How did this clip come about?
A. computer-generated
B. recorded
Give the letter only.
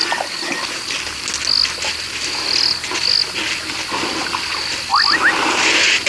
B